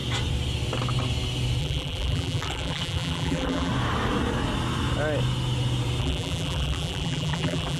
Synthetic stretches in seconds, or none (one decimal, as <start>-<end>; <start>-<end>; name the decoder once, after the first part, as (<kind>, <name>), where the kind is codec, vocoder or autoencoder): 1.6-3.7 (vocoder, BigVGAN v2); 6.0-7.8